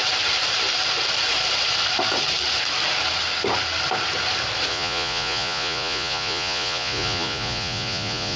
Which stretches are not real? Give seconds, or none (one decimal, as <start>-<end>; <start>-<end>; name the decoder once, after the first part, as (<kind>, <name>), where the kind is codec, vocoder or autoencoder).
4.7-8.4 (vocoder, Vocos)